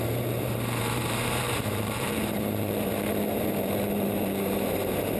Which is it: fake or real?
fake